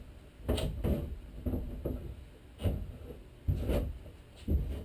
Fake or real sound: real